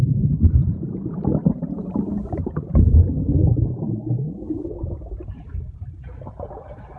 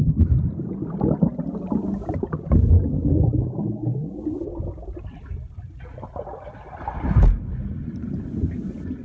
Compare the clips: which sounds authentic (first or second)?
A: second